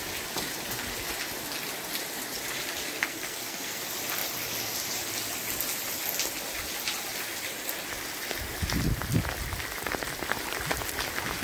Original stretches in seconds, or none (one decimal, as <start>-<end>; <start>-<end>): 0.0-2.9; 3.8-11.4